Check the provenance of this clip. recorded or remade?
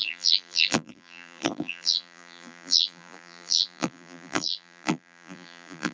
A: remade